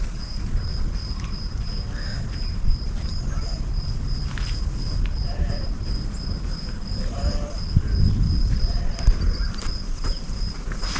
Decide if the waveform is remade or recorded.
recorded